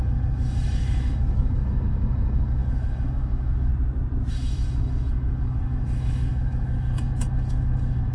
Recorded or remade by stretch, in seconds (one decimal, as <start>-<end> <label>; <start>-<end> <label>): 0.0-3.7 remade; 3.7-4.3 recorded; 4.3-8.1 remade